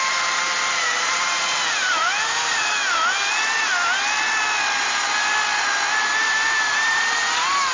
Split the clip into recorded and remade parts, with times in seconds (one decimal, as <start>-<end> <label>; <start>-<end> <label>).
0.0-2.8 remade; 2.8-6.2 recorded; 6.2-7.7 remade